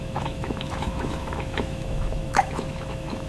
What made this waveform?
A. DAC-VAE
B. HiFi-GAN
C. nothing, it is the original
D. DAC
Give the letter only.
A